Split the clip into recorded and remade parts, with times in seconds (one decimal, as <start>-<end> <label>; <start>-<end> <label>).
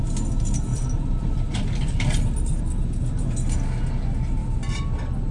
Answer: 0.0-0.7 recorded; 0.7-2.6 remade; 2.6-4.4 recorded; 4.4-5.3 remade